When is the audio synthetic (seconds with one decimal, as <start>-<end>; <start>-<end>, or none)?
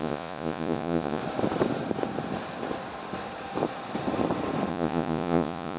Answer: 0.0-1.2; 4.7-5.8